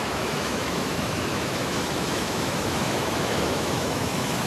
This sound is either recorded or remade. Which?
remade